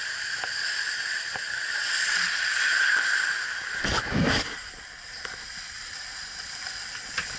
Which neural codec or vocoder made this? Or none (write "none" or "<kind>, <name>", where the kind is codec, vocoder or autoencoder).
none